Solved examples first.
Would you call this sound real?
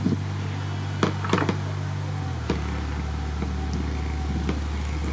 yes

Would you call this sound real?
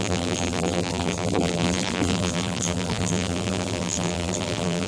no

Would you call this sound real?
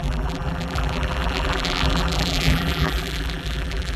no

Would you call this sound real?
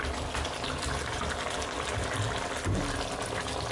yes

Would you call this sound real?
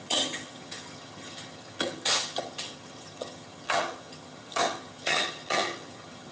no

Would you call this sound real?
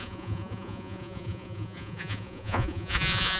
no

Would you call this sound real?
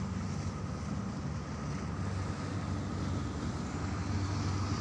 yes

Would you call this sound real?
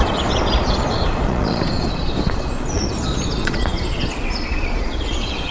no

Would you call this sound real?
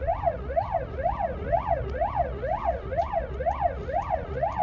no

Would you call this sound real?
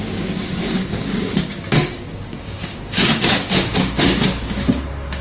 no